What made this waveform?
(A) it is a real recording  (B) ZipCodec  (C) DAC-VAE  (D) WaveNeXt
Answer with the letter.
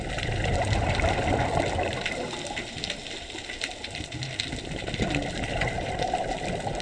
A